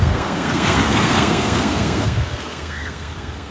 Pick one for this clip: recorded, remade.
remade